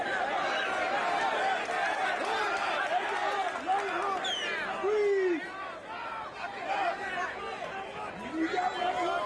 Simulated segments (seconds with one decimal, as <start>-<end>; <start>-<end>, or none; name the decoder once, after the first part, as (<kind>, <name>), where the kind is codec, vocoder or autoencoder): 2.0-2.7 (vocoder, BigVGAN v2)